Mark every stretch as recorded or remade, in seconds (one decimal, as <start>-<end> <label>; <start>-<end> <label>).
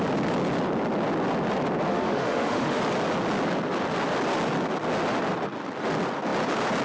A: 0.0-1.9 recorded; 1.9-2.8 remade; 2.8-6.8 recorded